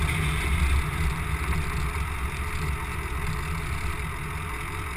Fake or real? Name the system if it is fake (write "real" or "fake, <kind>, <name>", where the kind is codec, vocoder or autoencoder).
real